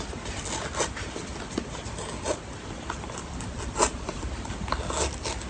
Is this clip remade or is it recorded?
recorded